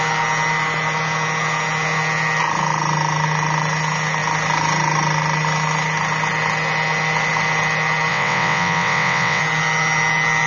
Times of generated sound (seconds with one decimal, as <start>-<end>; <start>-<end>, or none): 8.1-9.4